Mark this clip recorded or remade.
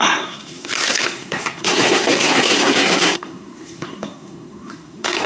remade